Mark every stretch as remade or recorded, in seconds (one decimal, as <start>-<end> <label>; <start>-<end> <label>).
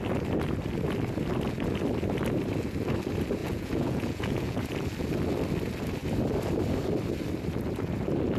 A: 0.0-3.4 recorded; 3.4-4.6 remade; 4.6-8.4 recorded